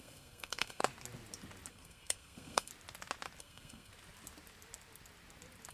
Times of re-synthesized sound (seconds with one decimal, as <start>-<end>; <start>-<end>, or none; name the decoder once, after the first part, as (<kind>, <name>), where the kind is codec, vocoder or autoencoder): 0.0-0.8 (codec, SNAC); 1.7-2.7; 3.4-3.9